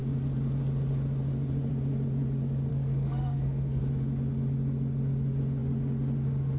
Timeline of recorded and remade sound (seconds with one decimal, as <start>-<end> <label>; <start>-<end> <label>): 0.0-2.7 recorded; 2.7-3.8 remade; 3.8-6.6 recorded